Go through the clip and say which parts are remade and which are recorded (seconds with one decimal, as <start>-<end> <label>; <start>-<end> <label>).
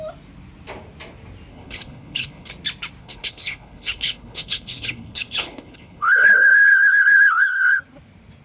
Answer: 0.0-1.5 recorded; 1.5-2.5 remade; 2.5-3.0 recorded; 3.0-7.8 remade; 7.8-8.4 recorded